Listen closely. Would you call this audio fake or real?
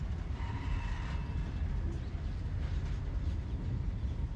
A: real